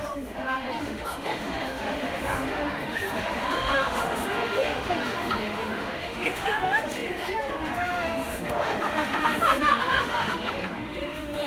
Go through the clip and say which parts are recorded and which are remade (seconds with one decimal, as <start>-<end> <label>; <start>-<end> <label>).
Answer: 0.0-11.5 remade